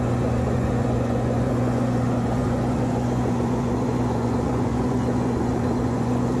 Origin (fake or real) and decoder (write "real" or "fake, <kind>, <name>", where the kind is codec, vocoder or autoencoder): fake, vocoder, Vocos